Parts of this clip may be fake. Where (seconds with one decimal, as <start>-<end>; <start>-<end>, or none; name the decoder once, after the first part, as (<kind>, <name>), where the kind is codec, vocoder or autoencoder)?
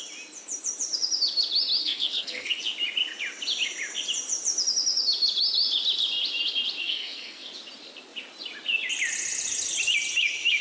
1.8-2.6 (codec, SNAC); 6.8-7.5